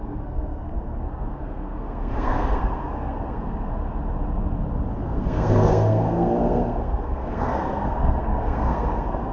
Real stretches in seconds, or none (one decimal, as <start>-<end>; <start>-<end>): 3.7-5.0